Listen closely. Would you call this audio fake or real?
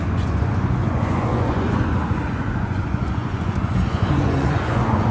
fake